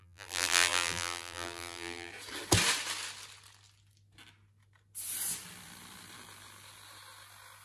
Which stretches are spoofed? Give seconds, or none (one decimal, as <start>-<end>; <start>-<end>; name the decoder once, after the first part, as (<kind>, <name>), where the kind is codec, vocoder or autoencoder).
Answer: 0.0-2.1 (vocoder, BigVGAN v2)